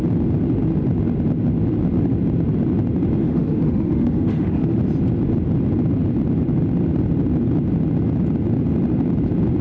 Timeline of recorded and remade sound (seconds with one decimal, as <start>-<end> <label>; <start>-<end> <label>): 0.0-3.2 recorded; 3.2-4.8 remade; 4.8-9.6 recorded